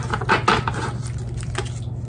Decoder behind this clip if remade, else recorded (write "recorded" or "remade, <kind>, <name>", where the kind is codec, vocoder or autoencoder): recorded